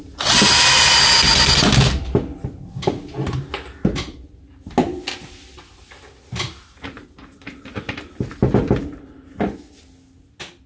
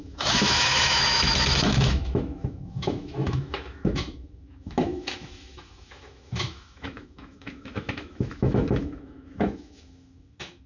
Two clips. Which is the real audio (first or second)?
first